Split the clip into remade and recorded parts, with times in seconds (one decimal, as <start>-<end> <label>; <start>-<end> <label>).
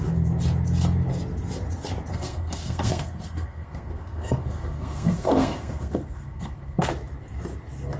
0.0-2.1 recorded; 2.1-6.9 remade; 6.9-8.0 recorded